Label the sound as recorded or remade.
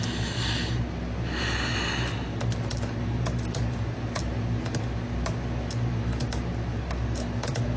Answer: recorded